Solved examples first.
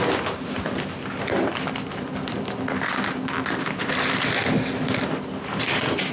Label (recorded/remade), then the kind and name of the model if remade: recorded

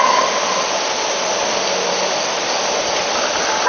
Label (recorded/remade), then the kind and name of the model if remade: recorded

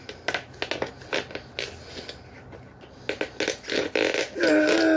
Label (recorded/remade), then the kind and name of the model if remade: recorded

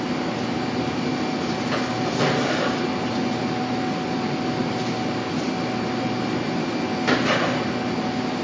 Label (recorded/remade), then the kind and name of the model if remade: recorded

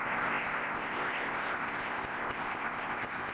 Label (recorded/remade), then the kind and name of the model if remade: remade, codec, ZipCodec